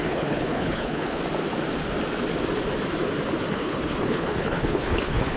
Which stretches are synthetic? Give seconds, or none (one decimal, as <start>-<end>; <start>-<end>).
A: 0.0-1.2; 3.5-5.4